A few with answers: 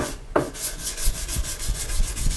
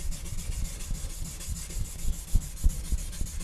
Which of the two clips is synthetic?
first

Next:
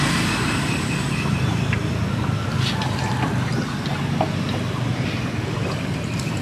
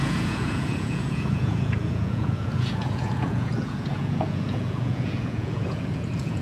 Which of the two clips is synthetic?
second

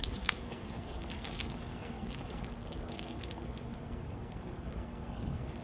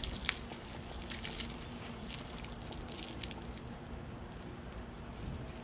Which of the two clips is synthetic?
first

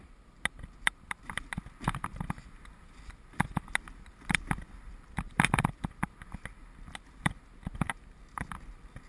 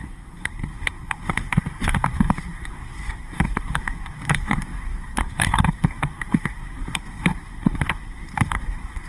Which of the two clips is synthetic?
second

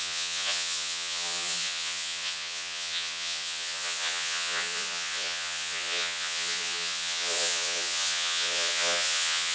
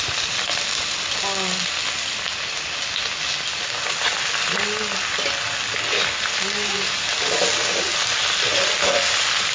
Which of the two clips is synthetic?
first